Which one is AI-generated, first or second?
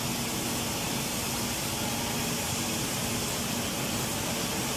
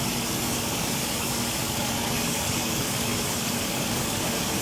second